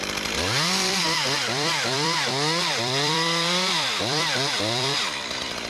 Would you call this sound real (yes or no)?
no